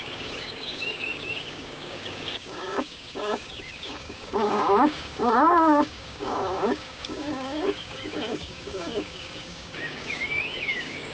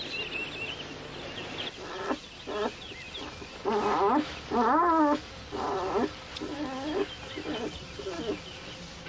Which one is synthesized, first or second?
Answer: first